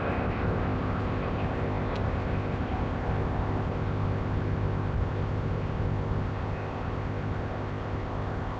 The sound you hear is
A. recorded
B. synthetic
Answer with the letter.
B